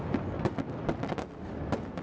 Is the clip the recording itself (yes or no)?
yes